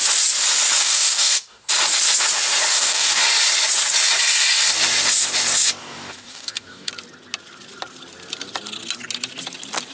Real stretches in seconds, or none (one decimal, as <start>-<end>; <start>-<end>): 0.0-0.8; 1.7-2.7; 3.2-5.8; 6.9-9.9